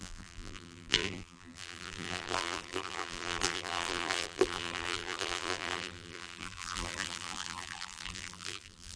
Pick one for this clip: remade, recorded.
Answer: remade